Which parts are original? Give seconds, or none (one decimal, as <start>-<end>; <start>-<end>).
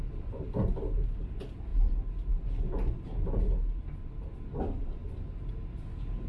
0.0-6.3